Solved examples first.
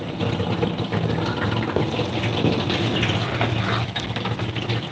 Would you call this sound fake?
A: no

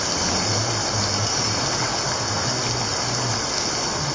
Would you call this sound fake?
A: no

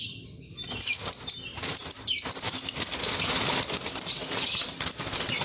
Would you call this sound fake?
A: no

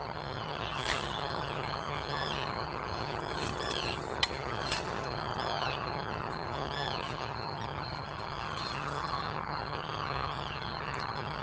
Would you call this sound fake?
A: yes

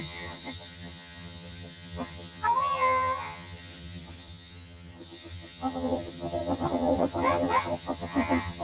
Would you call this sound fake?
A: yes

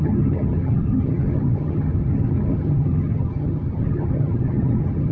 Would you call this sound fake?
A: yes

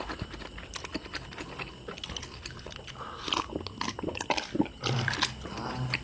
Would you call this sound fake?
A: no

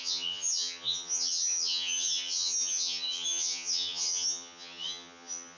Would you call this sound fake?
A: yes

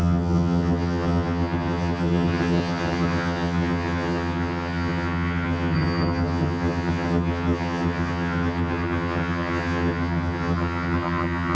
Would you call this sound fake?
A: yes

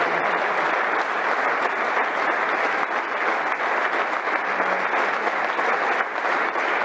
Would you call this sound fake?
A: no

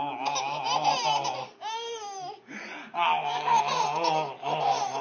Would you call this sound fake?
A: no